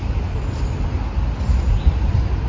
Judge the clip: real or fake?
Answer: real